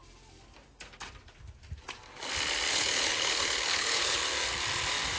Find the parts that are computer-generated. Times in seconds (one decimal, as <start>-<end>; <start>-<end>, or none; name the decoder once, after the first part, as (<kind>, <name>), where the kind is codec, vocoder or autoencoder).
2.7-4.2 (codec, HILCodec)